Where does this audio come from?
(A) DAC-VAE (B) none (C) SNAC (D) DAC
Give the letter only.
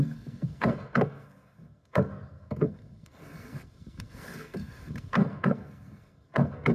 C